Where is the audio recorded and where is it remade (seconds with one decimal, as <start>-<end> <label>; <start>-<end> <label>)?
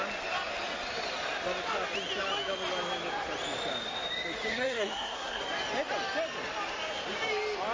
0.0-4.5 recorded; 4.5-5.4 remade; 5.4-7.7 recorded